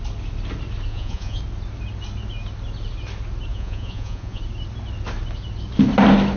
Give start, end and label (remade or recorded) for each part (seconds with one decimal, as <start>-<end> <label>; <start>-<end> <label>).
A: 0.0-0.9 recorded; 0.9-1.4 remade; 1.4-3.5 recorded; 3.5-4.4 remade; 4.4-6.4 recorded